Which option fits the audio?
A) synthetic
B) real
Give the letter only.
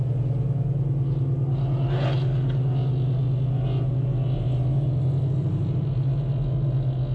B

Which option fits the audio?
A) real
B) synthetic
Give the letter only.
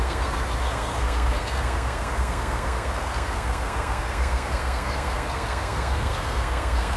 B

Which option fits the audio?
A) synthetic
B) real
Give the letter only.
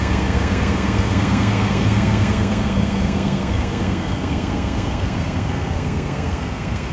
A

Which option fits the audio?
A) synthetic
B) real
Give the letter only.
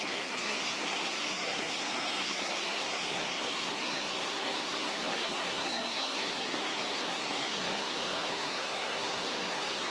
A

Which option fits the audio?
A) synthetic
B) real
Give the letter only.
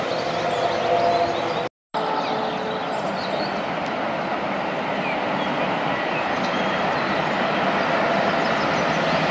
B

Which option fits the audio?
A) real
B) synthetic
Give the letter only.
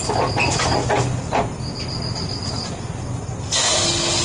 A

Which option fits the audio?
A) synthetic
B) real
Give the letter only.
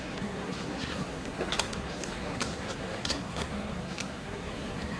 A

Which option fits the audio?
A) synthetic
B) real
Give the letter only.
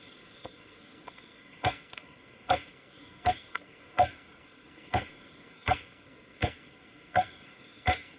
A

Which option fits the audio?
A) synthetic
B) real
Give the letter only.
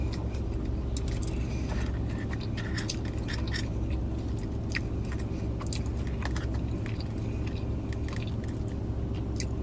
B